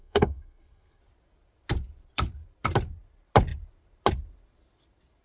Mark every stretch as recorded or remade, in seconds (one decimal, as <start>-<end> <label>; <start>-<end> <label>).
0.0-1.0 remade; 1.0-5.2 recorded